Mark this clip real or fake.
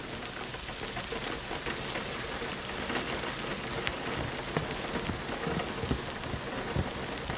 real